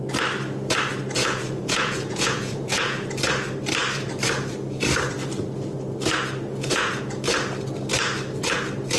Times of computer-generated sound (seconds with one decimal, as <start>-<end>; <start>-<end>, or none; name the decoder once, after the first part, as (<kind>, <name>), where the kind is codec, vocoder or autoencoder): 1.2-3.1 (vocoder, Vocos); 6.5-7.0